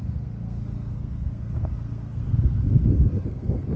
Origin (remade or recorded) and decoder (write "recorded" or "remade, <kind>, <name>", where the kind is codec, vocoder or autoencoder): remade, codec, SNAC